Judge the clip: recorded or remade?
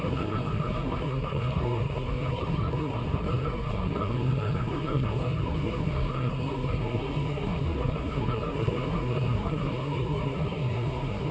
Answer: remade